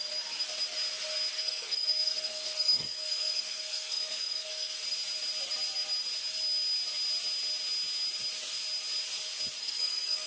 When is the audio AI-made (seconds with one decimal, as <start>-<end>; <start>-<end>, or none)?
1.3-4.8; 9.6-10.3